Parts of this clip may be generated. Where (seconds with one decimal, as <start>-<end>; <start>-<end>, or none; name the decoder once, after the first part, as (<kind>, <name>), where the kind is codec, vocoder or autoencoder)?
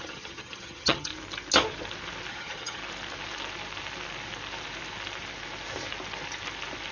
0.0-1.1 (vocoder, HiFi-GAN); 2.3-2.8